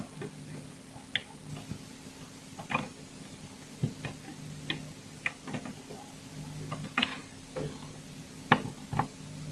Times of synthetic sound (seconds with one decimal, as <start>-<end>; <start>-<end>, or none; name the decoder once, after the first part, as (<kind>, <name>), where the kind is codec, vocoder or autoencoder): none